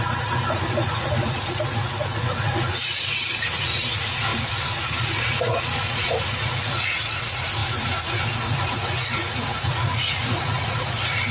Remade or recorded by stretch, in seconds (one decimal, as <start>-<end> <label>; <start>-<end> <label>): 0.0-11.3 remade